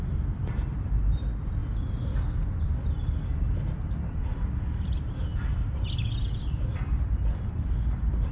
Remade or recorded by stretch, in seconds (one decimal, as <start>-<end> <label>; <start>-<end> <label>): 0.0-1.6 remade; 1.6-4.6 recorded; 4.6-8.3 remade